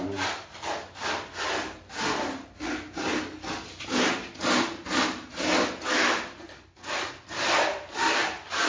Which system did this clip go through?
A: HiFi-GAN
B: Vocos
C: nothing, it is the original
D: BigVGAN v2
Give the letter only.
C